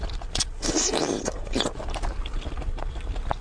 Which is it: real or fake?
real